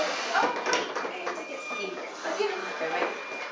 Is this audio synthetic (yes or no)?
no